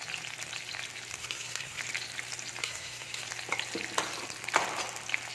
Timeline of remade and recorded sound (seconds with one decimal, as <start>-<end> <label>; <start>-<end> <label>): 0.0-1.2 recorded; 1.2-1.8 remade; 1.8-2.6 recorded; 2.6-3.2 remade; 3.2-5.3 recorded